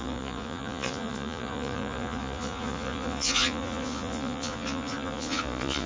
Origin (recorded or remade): remade